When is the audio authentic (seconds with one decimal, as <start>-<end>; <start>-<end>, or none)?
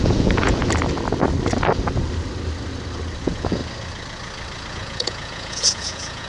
0.6-3.2; 3.6-4.7